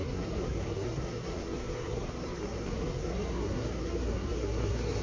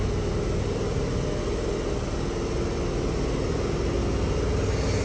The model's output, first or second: first